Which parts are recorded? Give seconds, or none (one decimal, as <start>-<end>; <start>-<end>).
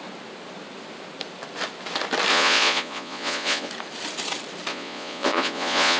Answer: 0.0-2.3; 3.7-4.7